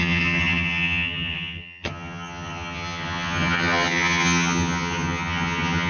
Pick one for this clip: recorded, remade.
remade